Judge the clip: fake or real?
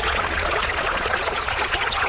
fake